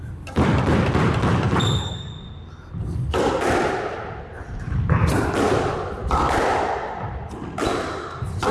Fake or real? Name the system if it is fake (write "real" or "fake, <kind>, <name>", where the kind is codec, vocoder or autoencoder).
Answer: real